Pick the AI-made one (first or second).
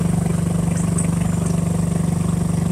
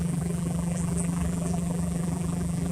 second